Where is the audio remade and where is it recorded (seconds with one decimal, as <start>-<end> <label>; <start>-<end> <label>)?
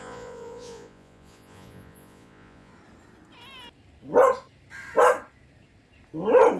0.0-2.7 remade; 2.7-6.6 recorded